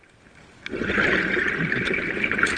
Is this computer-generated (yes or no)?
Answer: no